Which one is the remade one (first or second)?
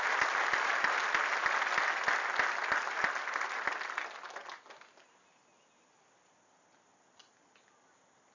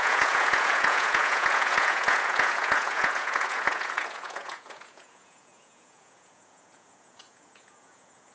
second